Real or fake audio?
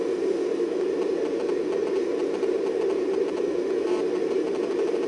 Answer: real